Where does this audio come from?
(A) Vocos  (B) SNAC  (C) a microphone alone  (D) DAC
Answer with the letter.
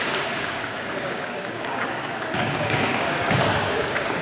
D